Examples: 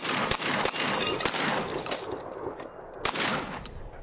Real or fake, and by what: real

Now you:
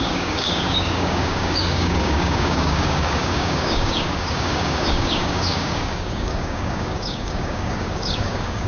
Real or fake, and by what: fake, codec, DAC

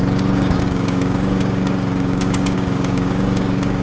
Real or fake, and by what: fake, codec, DAC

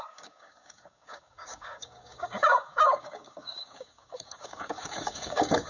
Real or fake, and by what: fake, codec, DAC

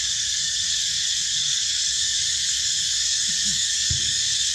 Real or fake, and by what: fake, codec, DAC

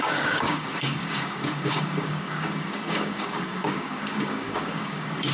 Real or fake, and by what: fake, codec, DAC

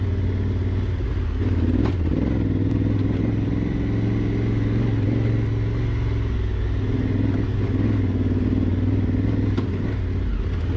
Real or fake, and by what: real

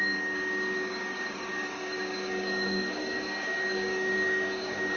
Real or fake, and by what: fake, codec, DAC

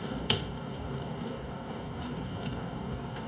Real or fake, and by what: fake, codec, DAC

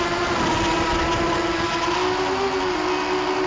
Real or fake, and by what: real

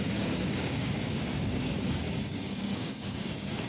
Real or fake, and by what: fake, codec, DAC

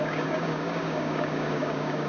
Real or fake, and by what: fake, codec, DAC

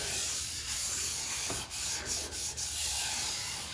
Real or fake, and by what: fake, codec, DAC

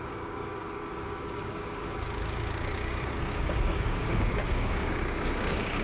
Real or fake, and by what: fake, codec, DAC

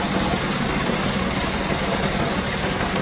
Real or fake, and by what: real